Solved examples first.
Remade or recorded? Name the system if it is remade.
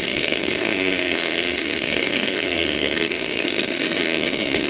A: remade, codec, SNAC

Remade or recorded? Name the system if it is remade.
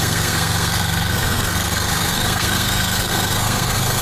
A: remade, codec, SNAC